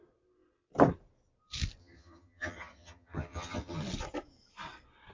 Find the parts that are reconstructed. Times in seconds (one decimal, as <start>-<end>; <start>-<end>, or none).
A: 1.8-3.8